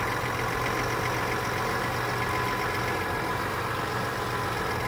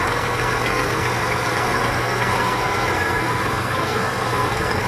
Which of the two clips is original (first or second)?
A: first